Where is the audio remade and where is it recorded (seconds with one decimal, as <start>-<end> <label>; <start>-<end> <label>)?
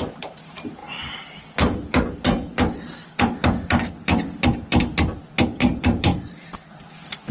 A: 0.0-7.3 recorded